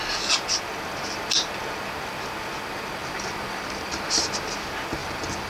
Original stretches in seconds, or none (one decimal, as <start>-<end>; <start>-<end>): 0.0-3.0; 4.1-5.0